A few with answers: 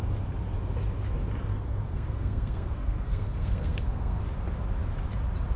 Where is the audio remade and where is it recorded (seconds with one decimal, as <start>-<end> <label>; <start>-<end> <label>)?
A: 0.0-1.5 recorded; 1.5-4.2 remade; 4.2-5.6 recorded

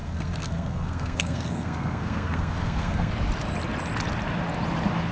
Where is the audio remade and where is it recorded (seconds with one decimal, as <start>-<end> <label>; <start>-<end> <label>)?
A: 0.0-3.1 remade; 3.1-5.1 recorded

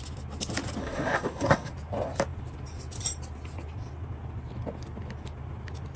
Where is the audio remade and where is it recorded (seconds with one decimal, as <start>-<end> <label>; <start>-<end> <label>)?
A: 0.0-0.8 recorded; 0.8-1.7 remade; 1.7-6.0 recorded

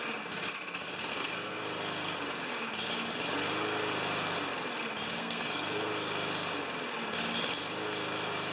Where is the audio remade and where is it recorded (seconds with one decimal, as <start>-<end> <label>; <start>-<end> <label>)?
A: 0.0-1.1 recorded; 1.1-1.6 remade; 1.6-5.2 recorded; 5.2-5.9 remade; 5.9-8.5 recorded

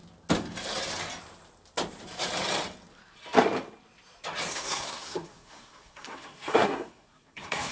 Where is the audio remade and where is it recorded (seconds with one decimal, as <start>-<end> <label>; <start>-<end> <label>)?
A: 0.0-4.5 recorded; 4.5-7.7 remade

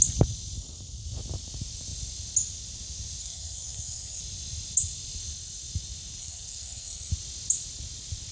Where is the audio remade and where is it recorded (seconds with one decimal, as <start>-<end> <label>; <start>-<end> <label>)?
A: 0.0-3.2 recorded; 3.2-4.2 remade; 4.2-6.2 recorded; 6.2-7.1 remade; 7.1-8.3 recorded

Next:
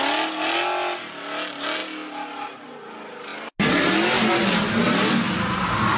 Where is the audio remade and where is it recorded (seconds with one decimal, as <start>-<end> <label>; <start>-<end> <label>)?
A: 0.0-6.0 recorded

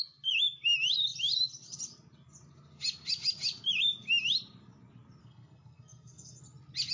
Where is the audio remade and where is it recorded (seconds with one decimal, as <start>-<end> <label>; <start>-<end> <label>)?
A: 0.0-5.2 recorded; 5.2-6.4 remade; 6.4-6.9 recorded